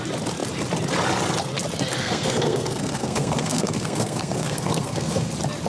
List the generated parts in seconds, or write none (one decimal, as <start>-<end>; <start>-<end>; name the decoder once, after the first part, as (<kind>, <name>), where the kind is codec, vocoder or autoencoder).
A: 1.9-5.3 (codec, SNAC)